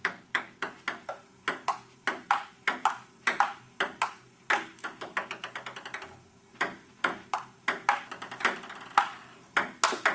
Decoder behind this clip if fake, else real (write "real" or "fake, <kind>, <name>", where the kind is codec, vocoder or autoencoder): real